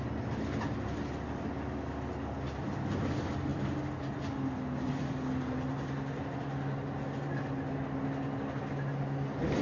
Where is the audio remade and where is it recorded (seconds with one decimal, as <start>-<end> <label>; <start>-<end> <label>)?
0.0-9.6 recorded